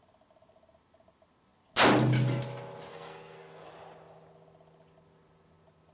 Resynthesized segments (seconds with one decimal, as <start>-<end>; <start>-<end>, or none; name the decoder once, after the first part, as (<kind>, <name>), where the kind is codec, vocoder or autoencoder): 2.9-3.7 (codec, SNAC)